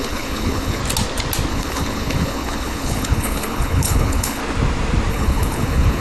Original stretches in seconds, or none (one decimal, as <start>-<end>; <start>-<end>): 0.8-1.5; 4.4-5.1